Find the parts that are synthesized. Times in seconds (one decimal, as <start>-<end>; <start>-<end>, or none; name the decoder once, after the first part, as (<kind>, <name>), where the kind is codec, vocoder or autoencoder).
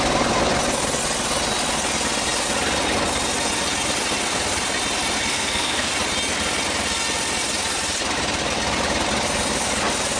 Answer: 5.3-5.9 (codec, SNAC)